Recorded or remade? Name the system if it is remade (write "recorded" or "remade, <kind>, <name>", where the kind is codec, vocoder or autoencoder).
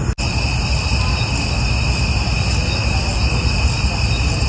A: recorded